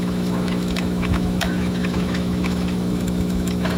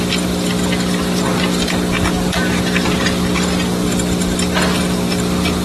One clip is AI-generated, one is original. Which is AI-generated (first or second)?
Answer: first